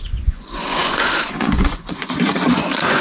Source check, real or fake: fake